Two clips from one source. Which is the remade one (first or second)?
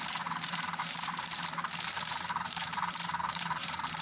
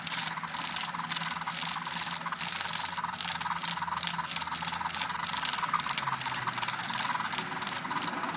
first